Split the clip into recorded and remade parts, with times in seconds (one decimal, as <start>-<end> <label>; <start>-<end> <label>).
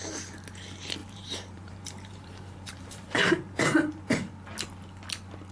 0.0-1.0 recorded; 1.0-4.3 remade; 4.3-5.5 recorded